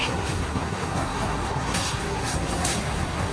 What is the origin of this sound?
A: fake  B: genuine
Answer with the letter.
A